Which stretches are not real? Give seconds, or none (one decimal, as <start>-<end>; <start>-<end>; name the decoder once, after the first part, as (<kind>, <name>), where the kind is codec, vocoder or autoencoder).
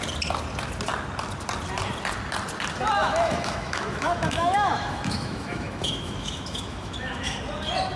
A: 3.0-7.4 (autoencoder, DAC-VAE)